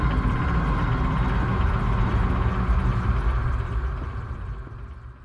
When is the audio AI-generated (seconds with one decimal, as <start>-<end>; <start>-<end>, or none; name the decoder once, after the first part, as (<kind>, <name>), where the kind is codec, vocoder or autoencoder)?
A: none